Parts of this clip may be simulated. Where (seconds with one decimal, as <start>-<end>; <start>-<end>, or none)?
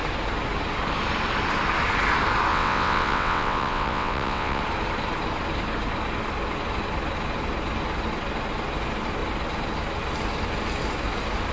2.5-4.6